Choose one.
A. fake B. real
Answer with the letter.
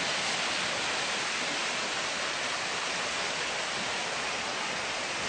B